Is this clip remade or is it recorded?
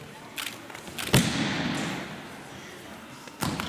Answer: recorded